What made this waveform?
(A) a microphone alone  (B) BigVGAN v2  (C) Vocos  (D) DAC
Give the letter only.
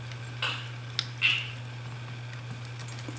A